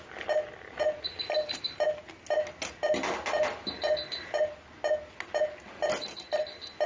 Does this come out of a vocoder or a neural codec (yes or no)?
no